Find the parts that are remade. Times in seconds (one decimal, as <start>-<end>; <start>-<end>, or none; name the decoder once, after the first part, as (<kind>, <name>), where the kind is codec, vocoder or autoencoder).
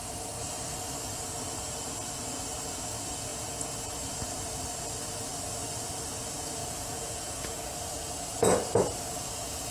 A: 3.3-3.9 (vocoder, Vocos); 6.6-7.6